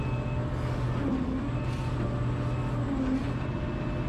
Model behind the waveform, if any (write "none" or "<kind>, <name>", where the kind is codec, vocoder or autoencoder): none